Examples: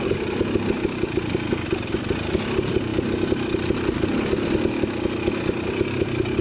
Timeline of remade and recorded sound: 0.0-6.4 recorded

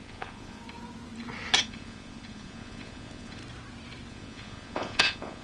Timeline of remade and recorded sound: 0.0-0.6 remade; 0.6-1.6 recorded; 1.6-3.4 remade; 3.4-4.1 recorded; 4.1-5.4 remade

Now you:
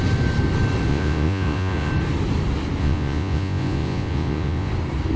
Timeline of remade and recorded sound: 0.0-0.9 recorded; 0.9-1.9 remade; 1.9-2.8 recorded; 2.8-4.7 remade; 4.7-5.2 recorded

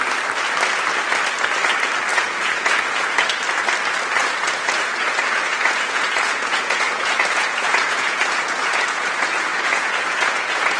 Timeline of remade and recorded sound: 0.0-2.1 recorded; 2.1-3.2 remade; 3.2-4.2 recorded; 4.2-9.0 remade; 9.0-9.5 recorded; 9.5-10.8 remade